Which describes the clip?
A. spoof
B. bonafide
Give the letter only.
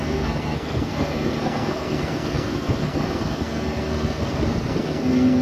A